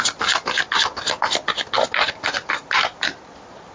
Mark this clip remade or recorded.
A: recorded